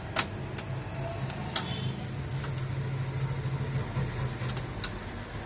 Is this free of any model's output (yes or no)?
yes